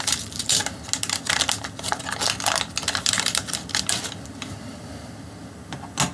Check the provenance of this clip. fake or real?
real